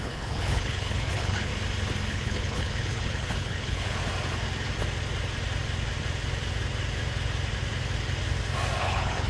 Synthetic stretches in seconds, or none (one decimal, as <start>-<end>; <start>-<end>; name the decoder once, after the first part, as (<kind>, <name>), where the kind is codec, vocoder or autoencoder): 0.0-1.5 (codec, HILCodec); 2.1-4.0; 8.8-9.3